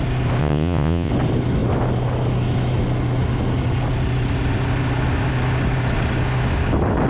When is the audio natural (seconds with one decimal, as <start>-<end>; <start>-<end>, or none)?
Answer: 0.0-0.4; 1.1-7.1